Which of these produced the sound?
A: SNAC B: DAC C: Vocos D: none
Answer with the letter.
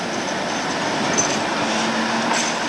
D